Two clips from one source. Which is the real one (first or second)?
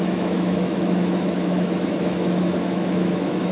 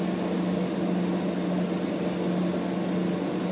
second